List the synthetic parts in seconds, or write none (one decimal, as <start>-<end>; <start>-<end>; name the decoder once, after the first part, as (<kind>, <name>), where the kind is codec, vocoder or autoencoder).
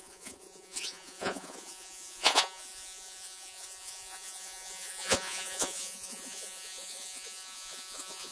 0.0-8.3 (vocoder, Vocos)